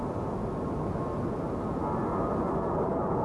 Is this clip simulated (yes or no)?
no